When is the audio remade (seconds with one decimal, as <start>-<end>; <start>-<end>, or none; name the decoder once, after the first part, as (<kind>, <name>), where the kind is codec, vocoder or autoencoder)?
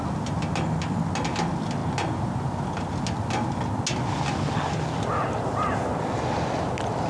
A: none